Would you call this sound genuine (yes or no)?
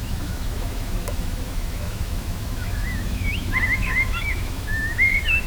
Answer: no